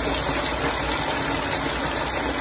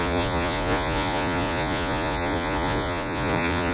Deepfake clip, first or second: second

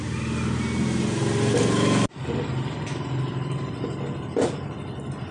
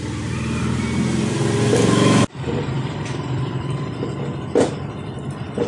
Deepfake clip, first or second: second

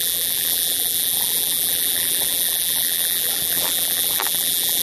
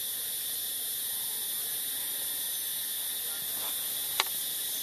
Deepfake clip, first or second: first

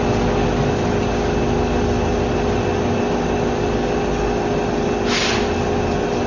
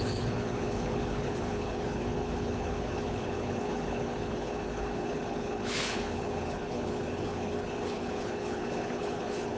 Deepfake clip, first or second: second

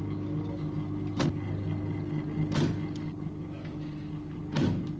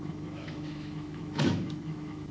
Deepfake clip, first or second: second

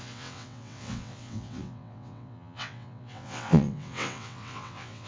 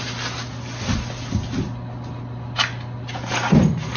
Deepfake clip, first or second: first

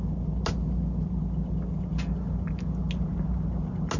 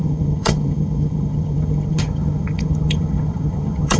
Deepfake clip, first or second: second